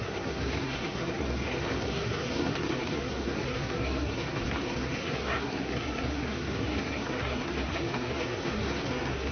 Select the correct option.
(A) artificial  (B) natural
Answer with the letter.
A